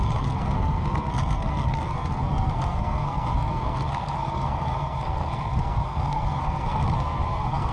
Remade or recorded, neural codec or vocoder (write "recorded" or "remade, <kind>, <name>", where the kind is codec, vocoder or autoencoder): remade, codec, SNAC